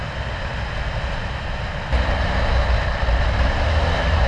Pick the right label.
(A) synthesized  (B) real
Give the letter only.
B